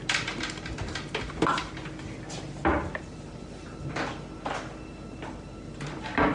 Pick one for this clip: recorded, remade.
recorded